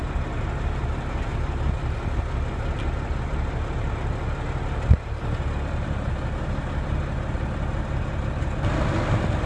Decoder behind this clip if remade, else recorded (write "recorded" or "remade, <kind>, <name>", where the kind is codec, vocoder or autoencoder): recorded